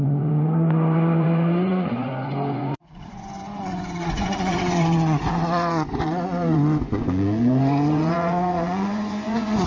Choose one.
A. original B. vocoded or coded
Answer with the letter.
B